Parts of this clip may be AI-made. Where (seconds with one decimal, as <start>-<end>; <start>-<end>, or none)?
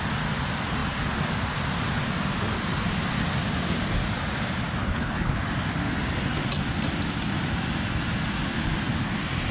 4.8-5.4